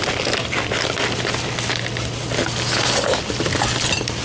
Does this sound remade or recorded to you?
recorded